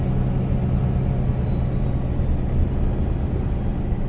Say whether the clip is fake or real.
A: real